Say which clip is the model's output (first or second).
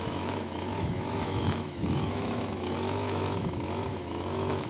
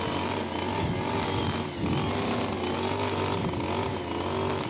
first